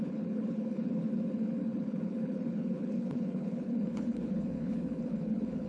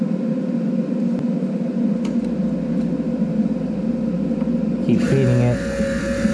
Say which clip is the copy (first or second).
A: first